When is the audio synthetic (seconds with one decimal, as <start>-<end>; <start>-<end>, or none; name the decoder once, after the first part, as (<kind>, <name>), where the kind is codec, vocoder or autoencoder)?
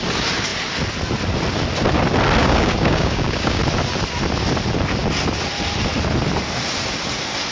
2.4-3.6 (codec, DAC)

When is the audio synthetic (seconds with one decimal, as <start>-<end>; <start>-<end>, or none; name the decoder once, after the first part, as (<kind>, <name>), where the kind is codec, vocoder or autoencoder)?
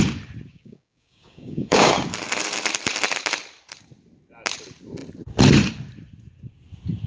0.5-1.9 (codec, DAC)